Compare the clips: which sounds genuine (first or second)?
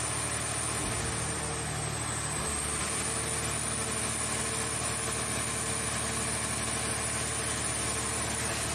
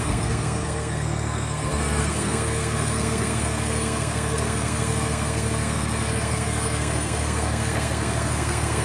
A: first